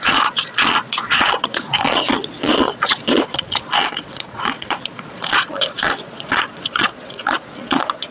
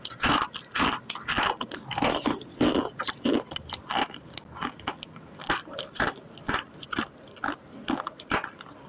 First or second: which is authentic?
second